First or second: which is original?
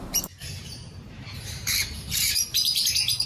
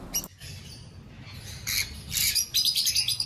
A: second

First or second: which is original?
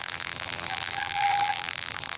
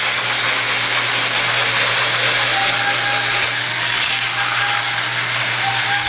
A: second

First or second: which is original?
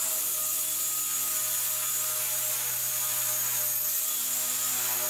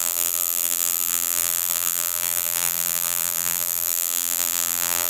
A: first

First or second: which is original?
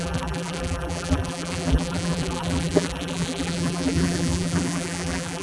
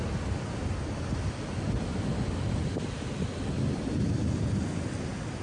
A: second